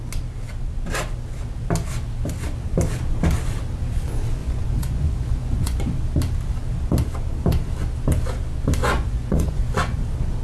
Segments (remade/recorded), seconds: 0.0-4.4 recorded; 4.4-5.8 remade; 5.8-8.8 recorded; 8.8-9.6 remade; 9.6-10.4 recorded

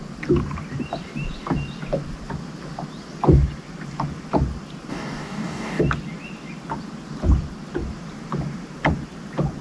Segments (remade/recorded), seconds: 0.0-4.9 recorded; 4.9-5.8 remade; 5.8-9.6 recorded

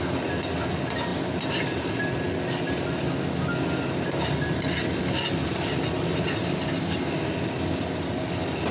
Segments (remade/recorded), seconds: 0.0-8.7 recorded

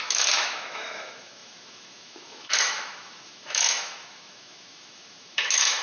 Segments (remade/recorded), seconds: 0.0-5.8 remade

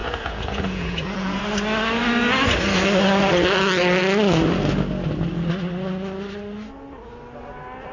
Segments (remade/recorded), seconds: 0.0-1.4 remade; 1.4-7.9 recorded

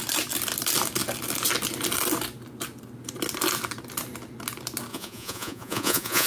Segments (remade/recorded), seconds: 0.0-4.9 recorded; 4.9-6.3 remade

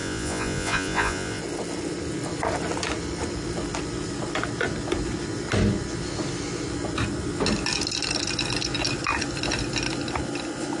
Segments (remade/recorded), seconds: 0.0-1.4 remade; 1.4-10.8 recorded

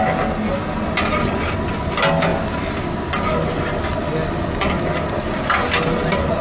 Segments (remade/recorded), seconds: 0.0-6.4 recorded